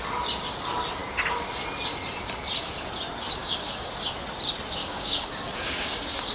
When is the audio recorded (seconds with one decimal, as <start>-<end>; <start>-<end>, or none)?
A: 0.0-3.4; 3.9-4.8